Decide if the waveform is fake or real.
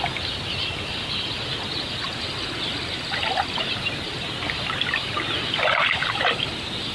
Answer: real